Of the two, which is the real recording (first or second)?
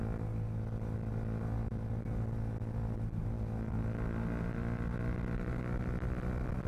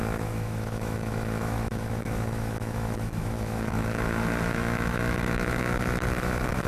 first